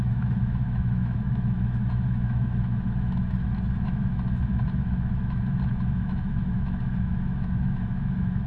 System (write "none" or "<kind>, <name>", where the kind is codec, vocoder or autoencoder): autoencoder, DAC-VAE